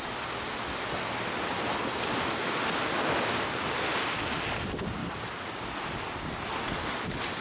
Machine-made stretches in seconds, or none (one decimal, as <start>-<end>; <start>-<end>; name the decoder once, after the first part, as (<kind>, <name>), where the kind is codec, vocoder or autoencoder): none